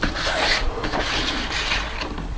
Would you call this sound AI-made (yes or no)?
yes